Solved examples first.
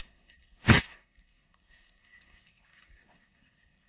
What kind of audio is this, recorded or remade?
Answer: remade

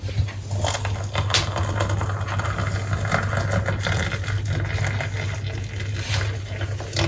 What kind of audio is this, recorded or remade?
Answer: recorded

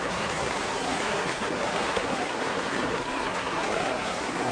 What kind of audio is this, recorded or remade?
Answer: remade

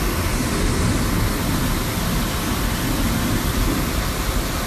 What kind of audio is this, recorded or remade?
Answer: recorded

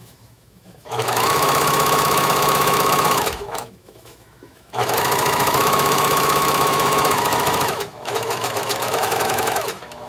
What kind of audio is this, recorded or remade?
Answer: remade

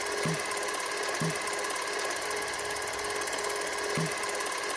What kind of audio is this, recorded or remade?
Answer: recorded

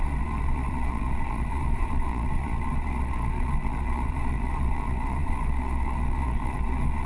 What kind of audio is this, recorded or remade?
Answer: remade